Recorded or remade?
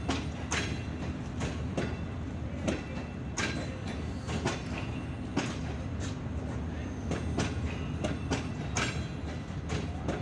recorded